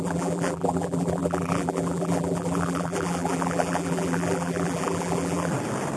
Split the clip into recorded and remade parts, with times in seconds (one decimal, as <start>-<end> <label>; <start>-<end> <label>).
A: 0.0-5.5 remade; 5.5-6.0 recorded